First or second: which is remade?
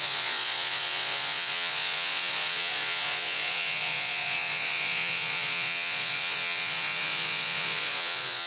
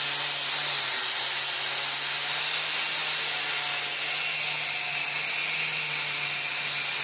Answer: first